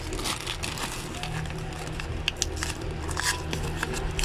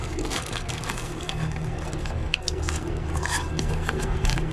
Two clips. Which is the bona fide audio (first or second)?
first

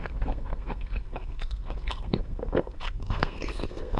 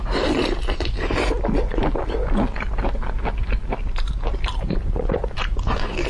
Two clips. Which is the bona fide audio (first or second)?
second